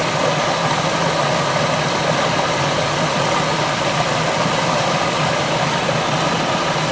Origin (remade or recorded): recorded